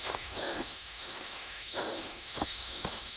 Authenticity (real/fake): fake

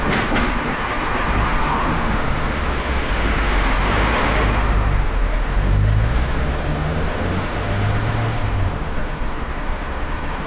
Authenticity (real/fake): fake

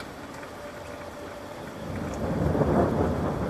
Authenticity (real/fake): real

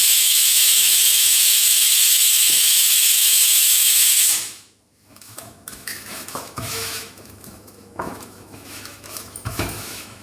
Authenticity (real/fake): fake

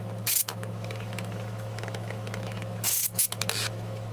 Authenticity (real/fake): fake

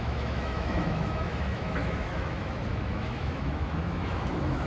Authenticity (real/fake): fake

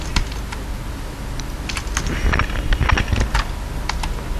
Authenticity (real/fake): real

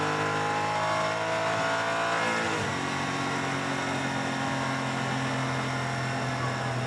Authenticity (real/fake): real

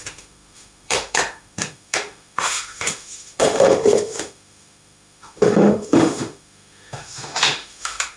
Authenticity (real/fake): fake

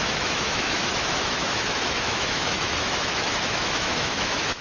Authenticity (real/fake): fake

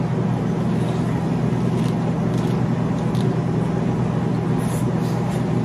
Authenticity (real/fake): real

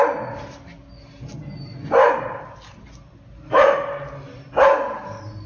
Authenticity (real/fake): real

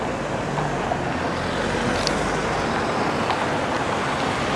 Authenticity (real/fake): real